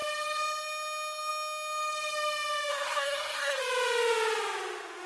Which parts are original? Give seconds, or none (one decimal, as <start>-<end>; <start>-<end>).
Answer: 0.0-2.7; 3.6-5.1